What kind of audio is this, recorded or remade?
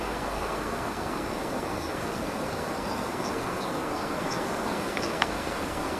remade